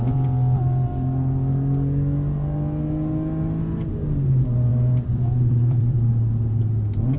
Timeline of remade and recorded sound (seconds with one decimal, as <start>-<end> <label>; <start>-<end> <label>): 0.0-4.7 recorded; 4.7-6.1 remade; 6.1-7.2 recorded